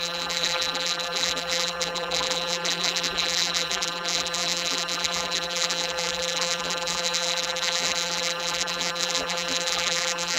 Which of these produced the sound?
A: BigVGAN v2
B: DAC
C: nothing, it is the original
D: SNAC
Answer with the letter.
A